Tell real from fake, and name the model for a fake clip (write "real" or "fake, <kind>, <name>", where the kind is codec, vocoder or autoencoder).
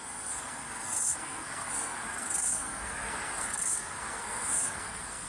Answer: fake, codec, SNAC